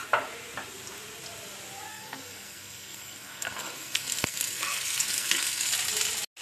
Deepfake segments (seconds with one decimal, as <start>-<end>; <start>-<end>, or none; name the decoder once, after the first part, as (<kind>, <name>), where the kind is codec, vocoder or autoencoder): 1.9-5.7 (codec, SNAC)